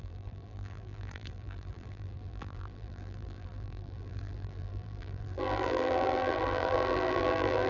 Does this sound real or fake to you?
fake